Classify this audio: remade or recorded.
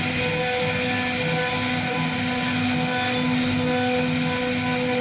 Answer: recorded